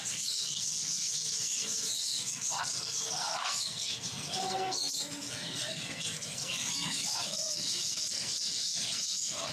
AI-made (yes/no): yes